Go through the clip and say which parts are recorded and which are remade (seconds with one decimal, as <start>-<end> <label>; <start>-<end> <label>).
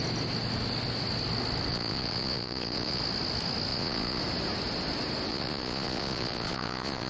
0.0-1.7 recorded; 1.7-3.0 remade; 3.0-3.7 recorded; 3.7-4.2 remade; 4.2-5.3 recorded; 5.3-7.1 remade